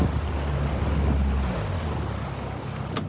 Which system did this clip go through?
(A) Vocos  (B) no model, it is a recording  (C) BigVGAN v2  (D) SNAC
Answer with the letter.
B